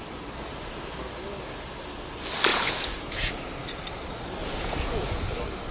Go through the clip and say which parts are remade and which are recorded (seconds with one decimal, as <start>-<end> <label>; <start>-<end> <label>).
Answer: 0.0-2.5 recorded; 2.5-3.3 remade; 3.3-4.4 recorded; 4.4-5.2 remade; 5.2-5.7 recorded